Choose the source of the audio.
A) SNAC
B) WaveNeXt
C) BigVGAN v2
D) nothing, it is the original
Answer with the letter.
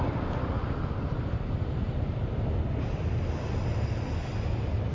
D